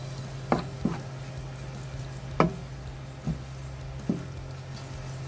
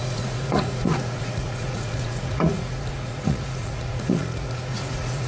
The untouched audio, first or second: first